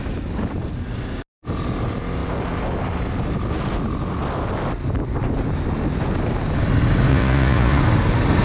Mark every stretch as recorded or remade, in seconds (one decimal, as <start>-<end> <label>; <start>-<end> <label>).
0.0-7.1 recorded; 7.1-7.8 remade; 7.8-8.4 recorded